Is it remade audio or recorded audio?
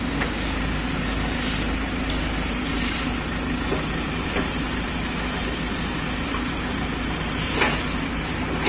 recorded